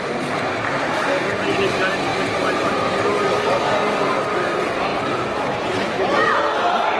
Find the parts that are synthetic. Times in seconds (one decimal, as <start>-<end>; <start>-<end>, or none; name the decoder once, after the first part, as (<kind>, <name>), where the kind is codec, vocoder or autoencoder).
2.1-3.2 (vocoder, BigVGAN v2); 4.9-7.0